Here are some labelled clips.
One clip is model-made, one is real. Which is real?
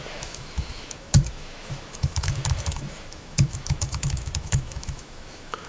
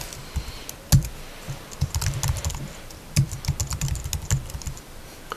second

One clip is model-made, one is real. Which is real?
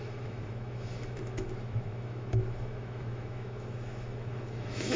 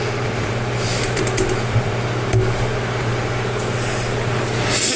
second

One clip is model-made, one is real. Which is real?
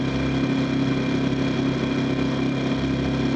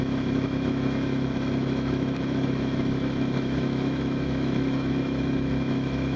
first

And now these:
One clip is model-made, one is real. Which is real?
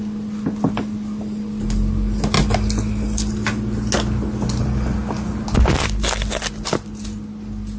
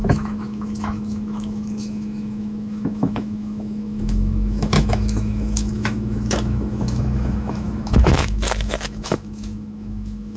first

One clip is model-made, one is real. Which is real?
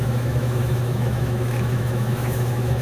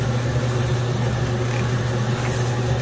second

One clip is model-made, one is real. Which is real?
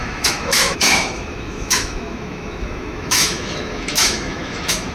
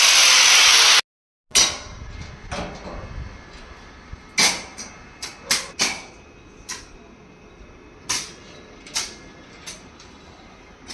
second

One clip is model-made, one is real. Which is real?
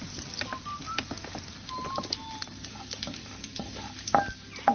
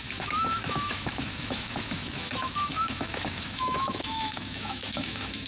first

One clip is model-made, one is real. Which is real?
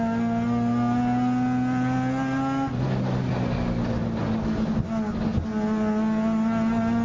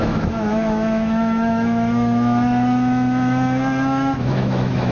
first